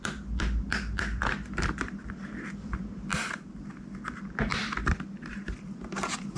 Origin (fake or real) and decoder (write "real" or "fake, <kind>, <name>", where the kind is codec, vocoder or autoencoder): fake, vocoder, BigVGAN v2